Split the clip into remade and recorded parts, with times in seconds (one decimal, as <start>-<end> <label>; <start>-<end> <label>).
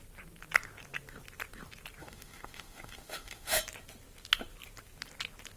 0.0-2.0 recorded; 2.0-3.6 remade; 3.6-5.6 recorded